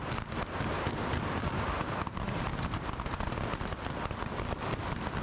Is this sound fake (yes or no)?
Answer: no